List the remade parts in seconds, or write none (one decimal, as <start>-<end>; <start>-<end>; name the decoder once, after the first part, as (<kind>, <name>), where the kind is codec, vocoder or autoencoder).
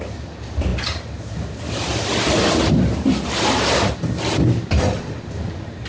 none